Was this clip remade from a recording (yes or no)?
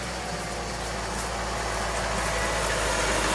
no